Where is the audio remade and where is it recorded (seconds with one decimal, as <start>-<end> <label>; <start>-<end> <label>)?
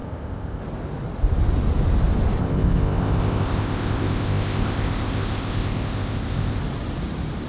0.0-0.6 remade; 0.6-2.4 recorded; 2.4-6.6 remade; 6.6-7.5 recorded